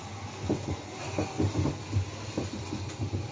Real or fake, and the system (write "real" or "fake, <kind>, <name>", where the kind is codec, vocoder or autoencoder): real